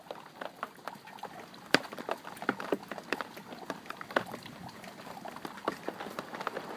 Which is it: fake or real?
real